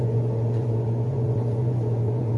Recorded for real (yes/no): no